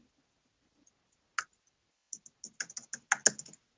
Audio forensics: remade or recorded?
recorded